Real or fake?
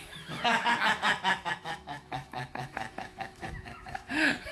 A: fake